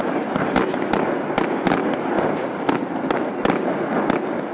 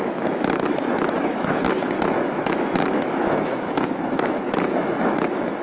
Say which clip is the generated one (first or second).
second